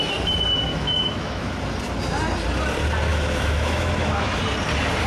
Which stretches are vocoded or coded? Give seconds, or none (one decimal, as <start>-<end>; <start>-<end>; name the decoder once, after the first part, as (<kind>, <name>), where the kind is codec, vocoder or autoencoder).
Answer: 0.7-1.5 (autoencoder, DAC-VAE); 3.1-4.4